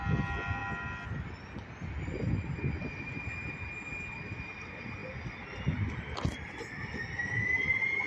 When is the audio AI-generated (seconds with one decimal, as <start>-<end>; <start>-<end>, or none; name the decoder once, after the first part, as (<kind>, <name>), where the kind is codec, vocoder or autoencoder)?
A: none